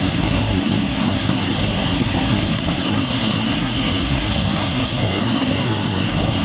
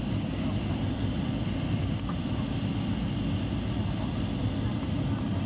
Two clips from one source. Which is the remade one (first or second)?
first